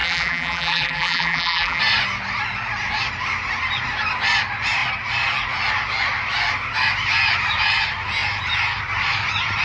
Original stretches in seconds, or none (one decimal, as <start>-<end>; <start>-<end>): 1.8-9.6